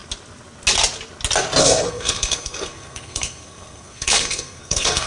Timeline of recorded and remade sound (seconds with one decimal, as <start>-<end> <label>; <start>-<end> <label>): 0.0-1.6 recorded; 1.6-5.1 remade